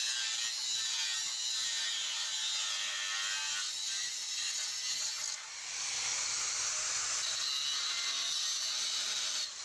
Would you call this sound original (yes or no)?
yes